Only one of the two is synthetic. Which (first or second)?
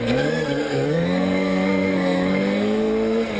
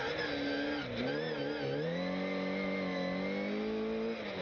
first